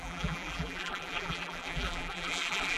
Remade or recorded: remade